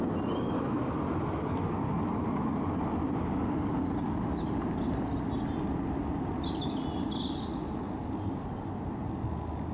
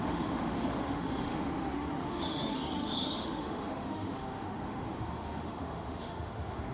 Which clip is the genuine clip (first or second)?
first